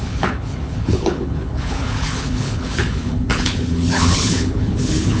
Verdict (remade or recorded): remade